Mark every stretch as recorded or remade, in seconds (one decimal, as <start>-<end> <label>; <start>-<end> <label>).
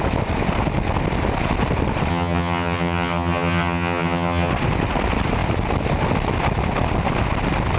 0.0-2.1 recorded; 2.1-4.5 remade; 4.5-7.8 recorded